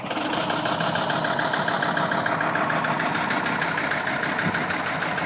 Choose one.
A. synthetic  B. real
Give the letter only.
B